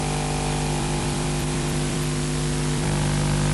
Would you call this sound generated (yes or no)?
yes